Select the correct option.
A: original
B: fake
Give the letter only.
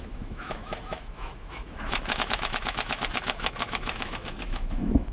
B